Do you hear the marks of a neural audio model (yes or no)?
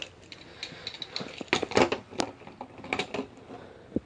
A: no